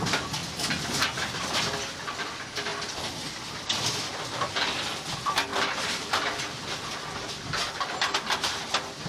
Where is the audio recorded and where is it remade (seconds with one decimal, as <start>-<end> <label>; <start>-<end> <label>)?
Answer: 0.0-9.1 recorded